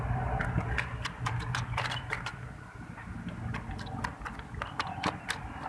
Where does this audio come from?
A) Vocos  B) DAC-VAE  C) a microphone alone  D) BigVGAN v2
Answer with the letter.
C